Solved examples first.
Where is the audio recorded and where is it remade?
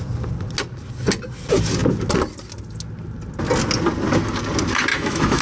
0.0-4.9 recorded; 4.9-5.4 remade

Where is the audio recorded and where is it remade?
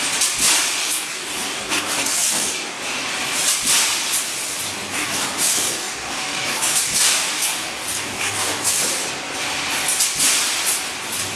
0.0-0.8 recorded; 0.8-2.8 remade; 2.8-4.9 recorded; 4.9-8.8 remade; 8.8-11.4 recorded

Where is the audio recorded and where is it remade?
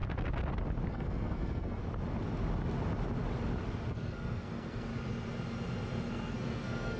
0.0-0.9 recorded; 0.9-1.8 remade; 1.8-3.9 recorded; 3.9-4.9 remade; 4.9-6.1 recorded; 6.1-7.0 remade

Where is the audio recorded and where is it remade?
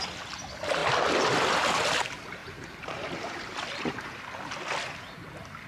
0.0-2.4 recorded; 2.4-4.2 remade; 4.2-5.7 recorded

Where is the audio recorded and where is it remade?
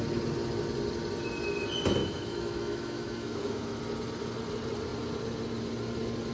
0.0-2.0 recorded; 2.0-3.8 remade; 3.8-6.3 recorded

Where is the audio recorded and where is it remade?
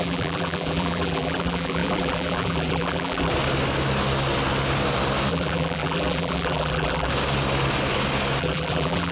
0.0-3.3 remade; 3.3-5.3 recorded; 5.3-7.1 remade; 7.1-8.4 recorded; 8.4-9.1 remade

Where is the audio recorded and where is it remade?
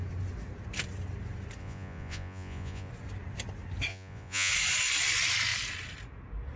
0.0-1.6 recorded; 1.6-2.9 remade; 2.9-3.9 recorded; 3.9-4.5 remade; 4.5-6.6 recorded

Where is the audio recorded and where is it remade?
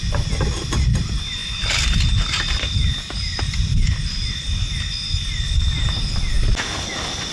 0.0-7.3 recorded